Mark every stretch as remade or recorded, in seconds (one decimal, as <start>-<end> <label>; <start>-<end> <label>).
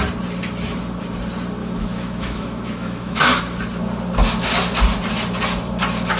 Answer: 0.0-1.6 recorded; 1.6-3.4 remade; 3.4-6.2 recorded